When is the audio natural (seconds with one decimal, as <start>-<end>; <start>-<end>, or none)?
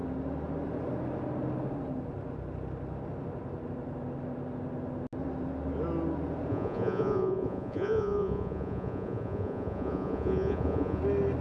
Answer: 0.0-6.5; 11.0-11.4